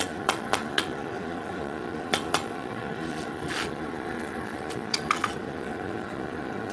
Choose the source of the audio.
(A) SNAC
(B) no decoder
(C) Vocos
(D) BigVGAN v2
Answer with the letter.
C